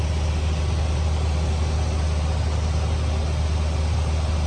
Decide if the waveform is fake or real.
real